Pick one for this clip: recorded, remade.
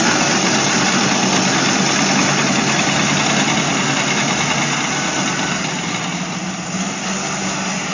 recorded